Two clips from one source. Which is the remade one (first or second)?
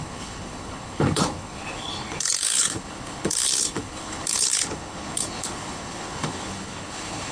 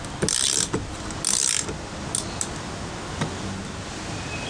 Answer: first